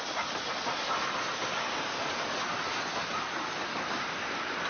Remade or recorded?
recorded